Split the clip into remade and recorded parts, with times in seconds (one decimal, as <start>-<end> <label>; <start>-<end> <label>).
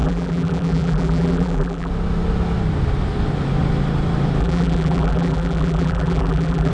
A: 0.0-1.9 remade; 1.9-4.4 recorded; 4.4-6.7 remade